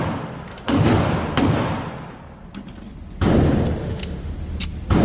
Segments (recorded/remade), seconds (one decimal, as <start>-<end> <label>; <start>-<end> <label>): 0.0-0.5 recorded; 0.5-1.0 remade; 1.0-3.8 recorded; 3.8-4.3 remade; 4.3-5.0 recorded